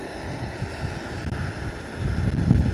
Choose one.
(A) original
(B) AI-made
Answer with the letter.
A